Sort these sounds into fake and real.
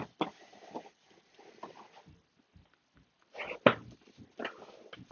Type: real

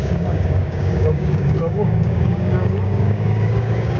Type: fake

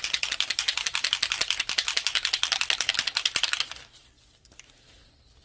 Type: fake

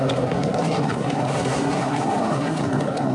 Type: fake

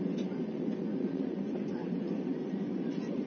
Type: fake